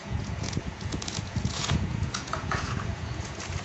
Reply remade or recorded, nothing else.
remade